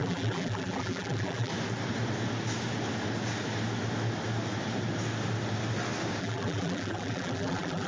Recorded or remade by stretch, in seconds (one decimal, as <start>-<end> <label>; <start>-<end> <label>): 0.0-1.5 remade; 1.5-6.2 recorded; 6.2-7.9 remade